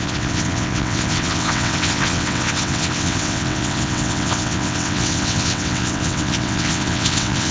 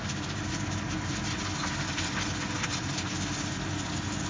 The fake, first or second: first